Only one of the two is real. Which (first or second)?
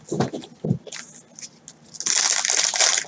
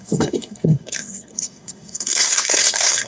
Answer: first